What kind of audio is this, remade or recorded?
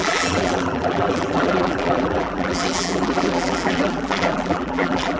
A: remade